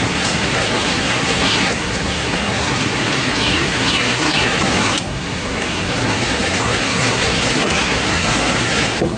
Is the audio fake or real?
fake